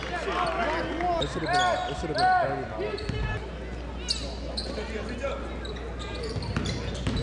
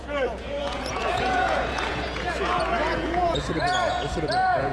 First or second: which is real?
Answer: first